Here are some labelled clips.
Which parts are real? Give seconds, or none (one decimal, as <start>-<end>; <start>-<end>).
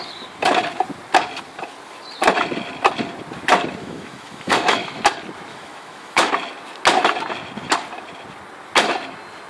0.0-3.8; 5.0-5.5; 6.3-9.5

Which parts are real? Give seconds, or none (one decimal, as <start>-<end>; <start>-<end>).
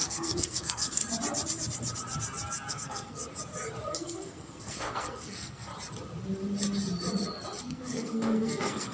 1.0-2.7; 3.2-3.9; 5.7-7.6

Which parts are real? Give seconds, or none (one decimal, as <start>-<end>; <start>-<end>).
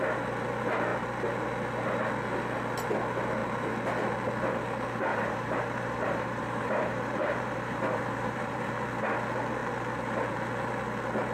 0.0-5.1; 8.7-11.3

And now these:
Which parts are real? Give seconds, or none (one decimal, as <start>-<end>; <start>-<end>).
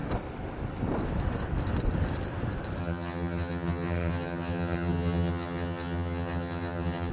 0.0-2.8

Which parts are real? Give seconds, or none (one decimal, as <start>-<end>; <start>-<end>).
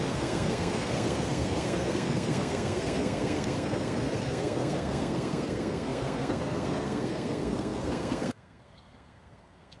none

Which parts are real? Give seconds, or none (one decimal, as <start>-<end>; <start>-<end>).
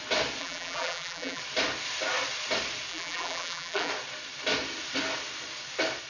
0.0-0.4; 1.4-2.9; 3.9-6.1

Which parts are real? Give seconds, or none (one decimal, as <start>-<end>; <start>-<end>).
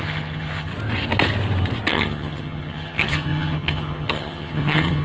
0.7-1.9